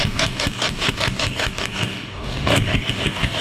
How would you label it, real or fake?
fake